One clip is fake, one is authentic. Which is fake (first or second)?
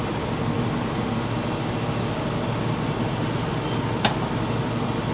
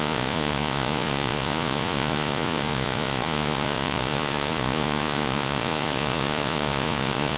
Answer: second